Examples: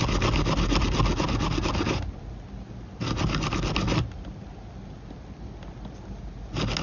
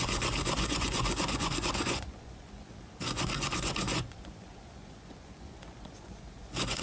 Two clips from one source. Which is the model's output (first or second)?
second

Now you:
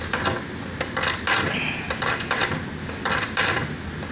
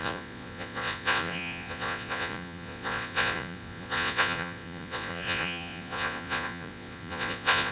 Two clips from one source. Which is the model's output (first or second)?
second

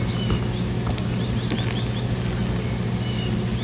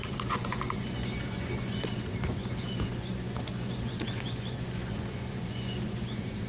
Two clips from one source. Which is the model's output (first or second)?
second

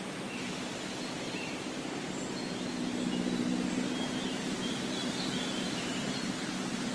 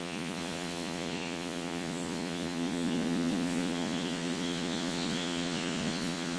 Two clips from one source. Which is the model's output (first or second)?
second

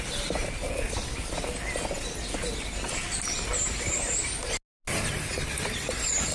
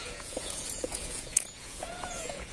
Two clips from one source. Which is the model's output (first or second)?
second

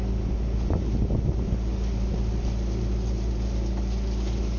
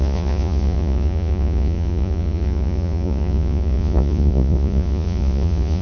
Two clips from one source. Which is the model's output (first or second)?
second